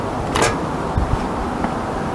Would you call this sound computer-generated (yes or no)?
no